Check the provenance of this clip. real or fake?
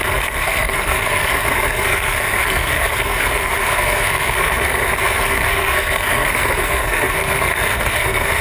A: fake